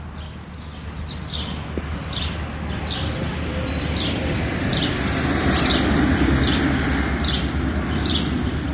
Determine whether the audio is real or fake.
real